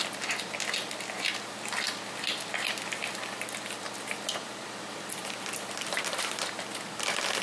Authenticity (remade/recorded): remade